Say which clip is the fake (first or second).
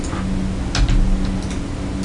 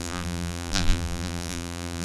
second